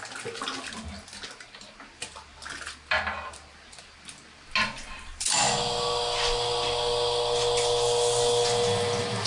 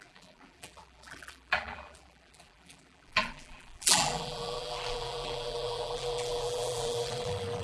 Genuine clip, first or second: first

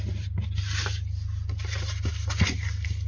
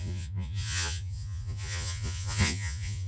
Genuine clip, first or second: first